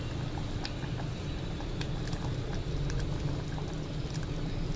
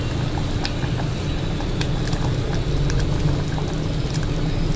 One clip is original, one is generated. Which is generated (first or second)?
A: first